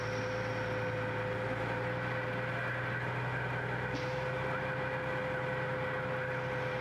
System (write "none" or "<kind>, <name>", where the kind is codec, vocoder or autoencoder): none